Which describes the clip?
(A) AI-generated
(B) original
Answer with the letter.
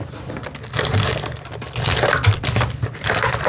B